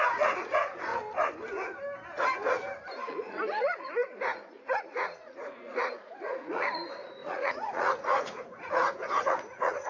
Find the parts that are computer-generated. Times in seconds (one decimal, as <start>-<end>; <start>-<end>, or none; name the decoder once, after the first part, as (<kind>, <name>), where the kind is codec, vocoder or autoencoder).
0.0-0.9 (vocoder, Vocos); 2.2-2.6; 3.1-9.9